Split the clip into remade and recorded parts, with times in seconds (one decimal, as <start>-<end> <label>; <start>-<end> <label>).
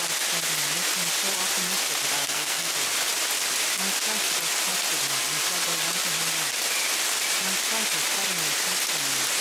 0.0-2.2 recorded; 2.2-2.7 remade; 2.7-9.4 recorded